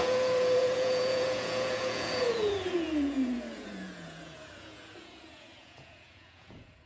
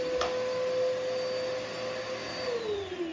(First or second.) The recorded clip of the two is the second